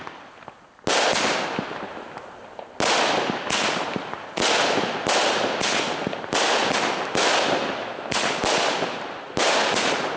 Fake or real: real